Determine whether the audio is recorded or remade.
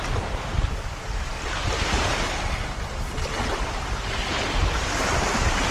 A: recorded